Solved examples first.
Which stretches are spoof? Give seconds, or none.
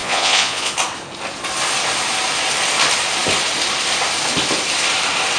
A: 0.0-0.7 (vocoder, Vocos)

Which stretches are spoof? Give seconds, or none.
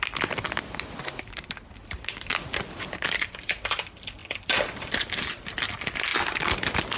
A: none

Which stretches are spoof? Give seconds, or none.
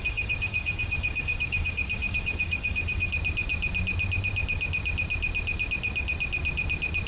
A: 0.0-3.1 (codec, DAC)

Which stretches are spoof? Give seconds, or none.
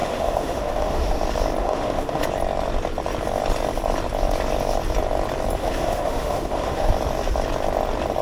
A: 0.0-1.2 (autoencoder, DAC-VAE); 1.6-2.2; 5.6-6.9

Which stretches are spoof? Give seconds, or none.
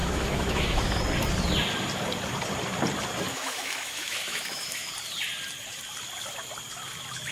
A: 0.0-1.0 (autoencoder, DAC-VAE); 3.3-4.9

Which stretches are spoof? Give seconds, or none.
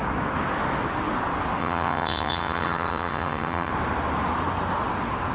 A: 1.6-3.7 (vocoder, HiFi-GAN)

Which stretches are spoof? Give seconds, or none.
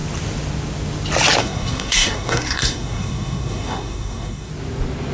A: 1.4-4.5 (codec, SNAC)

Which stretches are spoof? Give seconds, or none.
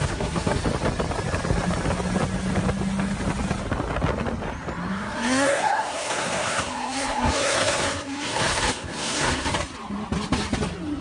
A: 0.0-0.6 (codec, SNAC); 4.9-9.5